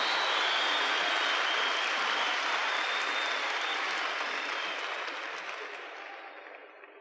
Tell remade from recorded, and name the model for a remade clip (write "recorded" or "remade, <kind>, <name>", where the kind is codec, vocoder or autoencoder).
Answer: recorded